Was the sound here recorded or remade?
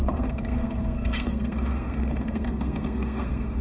remade